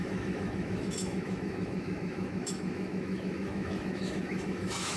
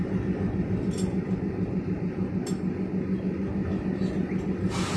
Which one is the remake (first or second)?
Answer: first